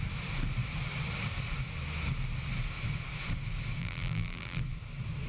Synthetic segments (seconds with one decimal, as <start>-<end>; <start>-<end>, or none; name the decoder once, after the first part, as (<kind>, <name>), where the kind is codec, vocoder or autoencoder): 3.8-4.6 (vocoder, BigVGAN v2)